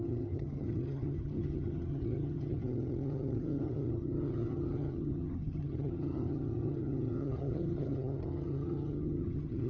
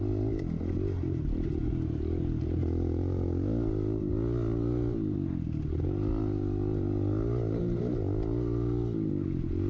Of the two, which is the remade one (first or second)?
first